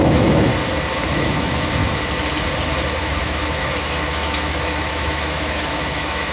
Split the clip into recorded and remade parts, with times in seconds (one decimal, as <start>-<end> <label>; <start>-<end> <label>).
0.0-0.5 remade; 0.5-1.1 recorded; 1.1-1.8 remade; 1.8-3.0 recorded; 3.0-6.3 remade